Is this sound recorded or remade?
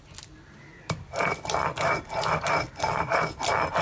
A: recorded